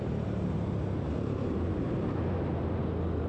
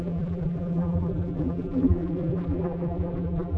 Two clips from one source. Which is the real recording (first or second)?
first